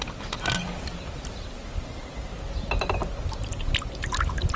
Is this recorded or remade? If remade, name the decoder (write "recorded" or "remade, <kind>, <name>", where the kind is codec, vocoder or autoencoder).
recorded